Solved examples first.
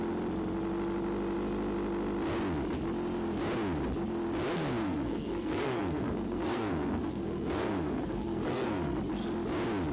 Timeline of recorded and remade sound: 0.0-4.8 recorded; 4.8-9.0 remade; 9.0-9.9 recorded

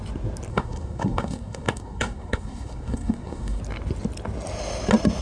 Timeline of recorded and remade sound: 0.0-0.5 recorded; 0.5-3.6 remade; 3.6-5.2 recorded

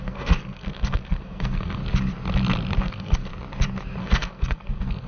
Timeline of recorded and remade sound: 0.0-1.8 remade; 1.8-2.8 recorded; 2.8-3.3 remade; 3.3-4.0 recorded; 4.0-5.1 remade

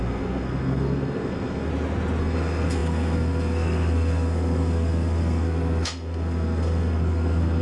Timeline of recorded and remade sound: 0.0-1.7 remade; 1.7-2.2 recorded; 2.2-7.6 remade